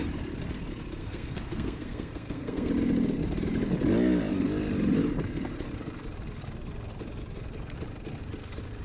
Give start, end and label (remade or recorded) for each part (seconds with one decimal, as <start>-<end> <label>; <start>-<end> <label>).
0.0-1.0 recorded; 1.0-2.7 remade; 2.7-8.8 recorded